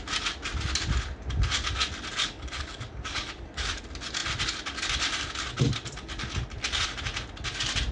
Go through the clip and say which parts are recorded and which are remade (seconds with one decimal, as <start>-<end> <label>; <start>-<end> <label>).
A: 0.0-2.2 recorded; 2.2-3.8 remade; 3.8-7.9 recorded